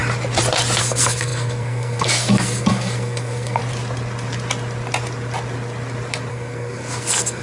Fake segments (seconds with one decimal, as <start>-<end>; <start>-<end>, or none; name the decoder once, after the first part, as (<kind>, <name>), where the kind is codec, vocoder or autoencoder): 0.8-3.6 (codec, SNAC); 6.3-7.4